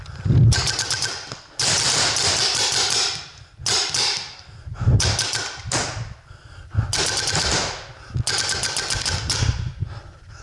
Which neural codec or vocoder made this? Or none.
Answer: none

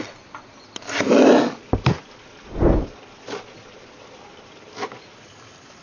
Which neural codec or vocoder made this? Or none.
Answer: none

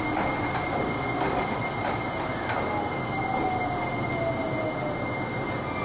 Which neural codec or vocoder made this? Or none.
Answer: none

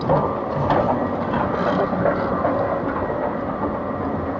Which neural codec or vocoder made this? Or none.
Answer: none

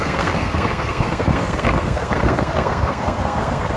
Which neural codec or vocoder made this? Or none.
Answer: codec, SNAC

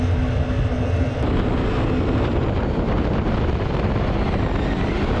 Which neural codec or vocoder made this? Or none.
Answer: none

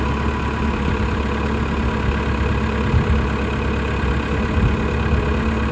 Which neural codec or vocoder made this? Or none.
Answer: none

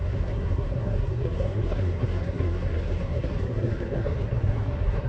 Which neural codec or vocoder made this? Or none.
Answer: codec, SNAC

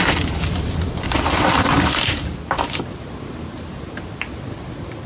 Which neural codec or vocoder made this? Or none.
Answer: none